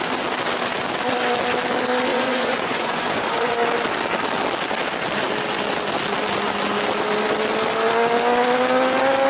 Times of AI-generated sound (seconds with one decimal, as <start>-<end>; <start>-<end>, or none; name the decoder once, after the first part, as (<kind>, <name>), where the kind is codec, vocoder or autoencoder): 2.1-3.5 (vocoder, Vocos)